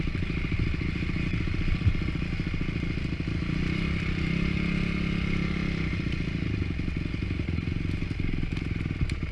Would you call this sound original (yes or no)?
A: yes